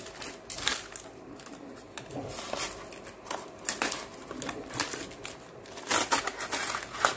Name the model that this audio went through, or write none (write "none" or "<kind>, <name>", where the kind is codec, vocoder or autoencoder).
none